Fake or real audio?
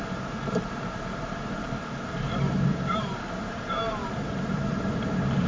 fake